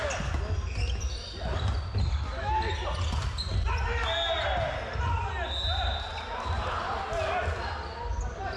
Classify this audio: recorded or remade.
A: recorded